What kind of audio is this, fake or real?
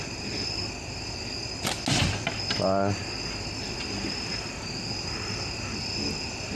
real